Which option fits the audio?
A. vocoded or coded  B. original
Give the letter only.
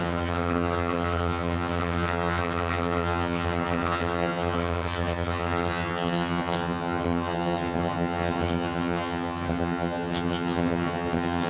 A